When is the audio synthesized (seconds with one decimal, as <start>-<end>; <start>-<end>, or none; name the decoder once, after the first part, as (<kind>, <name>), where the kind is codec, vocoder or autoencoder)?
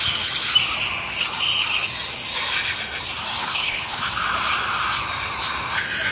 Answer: 3.4-4.0 (codec, HILCodec)